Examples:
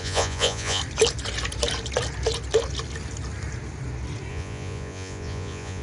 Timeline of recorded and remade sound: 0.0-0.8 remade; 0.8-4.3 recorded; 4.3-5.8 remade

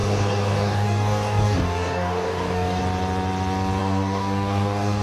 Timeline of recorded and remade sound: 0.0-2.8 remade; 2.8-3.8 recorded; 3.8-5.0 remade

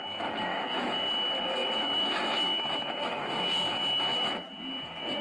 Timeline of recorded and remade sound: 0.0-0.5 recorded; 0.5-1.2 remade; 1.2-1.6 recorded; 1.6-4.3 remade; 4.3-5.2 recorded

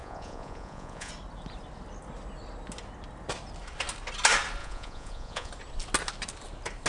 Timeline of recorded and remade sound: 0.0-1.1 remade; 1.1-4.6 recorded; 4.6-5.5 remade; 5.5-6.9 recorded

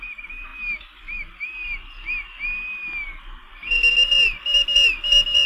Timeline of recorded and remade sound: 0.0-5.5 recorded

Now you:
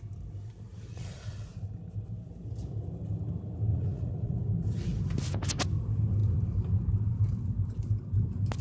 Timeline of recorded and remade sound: 0.0-0.9 recorded; 0.9-1.5 remade; 1.5-3.7 recorded; 3.7-4.4 remade; 4.4-8.6 recorded

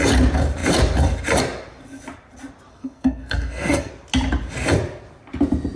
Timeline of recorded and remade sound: 0.0-2.7 recorded; 2.7-3.9 remade; 3.9-5.8 recorded

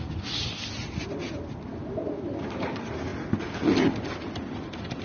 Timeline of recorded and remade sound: 0.0-5.0 recorded